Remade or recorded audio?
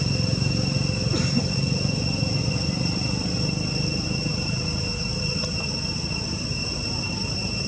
recorded